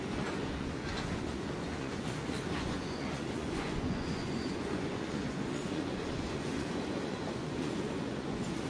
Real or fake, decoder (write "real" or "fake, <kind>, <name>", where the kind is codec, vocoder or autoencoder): fake, vocoder, Vocos